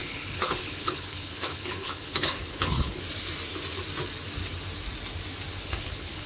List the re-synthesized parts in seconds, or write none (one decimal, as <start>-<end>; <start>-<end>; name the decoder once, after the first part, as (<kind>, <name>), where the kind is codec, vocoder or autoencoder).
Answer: 0.0-3.0 (codec, HILCodec); 5.5-6.3